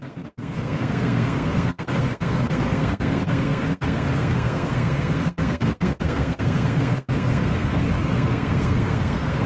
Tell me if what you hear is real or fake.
fake